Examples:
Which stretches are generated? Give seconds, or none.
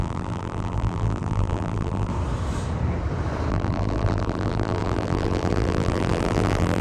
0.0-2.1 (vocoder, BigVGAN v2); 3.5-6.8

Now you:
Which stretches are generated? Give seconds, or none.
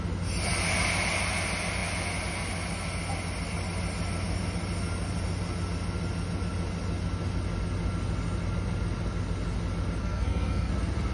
10.0-10.7 (codec, SNAC)